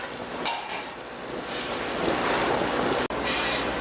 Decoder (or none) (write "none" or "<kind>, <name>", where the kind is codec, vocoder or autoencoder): none